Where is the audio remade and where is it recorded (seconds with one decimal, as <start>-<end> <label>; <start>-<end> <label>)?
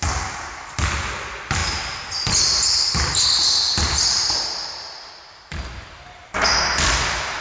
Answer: 0.0-7.4 recorded